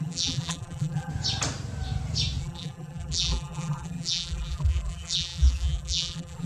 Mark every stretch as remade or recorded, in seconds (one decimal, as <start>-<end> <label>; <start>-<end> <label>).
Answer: 0.0-1.1 remade; 1.1-2.4 recorded; 2.4-6.5 remade